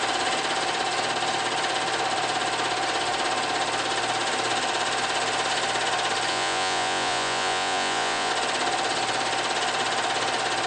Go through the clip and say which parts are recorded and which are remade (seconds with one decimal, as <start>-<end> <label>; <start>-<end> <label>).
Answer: 0.0-6.3 recorded; 6.3-8.3 remade; 8.3-10.7 recorded